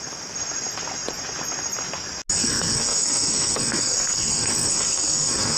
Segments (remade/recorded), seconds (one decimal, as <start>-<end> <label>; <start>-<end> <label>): 0.0-2.4 recorded; 2.4-5.6 remade